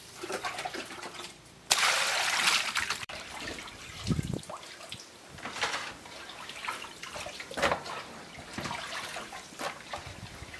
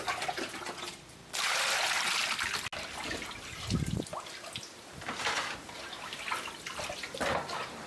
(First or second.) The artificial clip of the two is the first